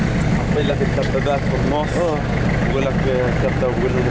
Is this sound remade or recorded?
recorded